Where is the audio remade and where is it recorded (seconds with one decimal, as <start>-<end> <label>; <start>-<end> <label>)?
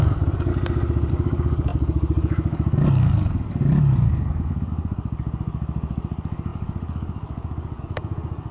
0.0-0.5 remade; 0.5-1.1 recorded; 1.1-8.5 remade